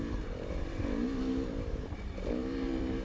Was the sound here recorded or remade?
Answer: remade